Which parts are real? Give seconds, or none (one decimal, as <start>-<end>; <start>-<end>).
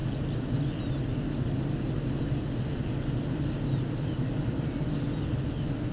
0.0-5.9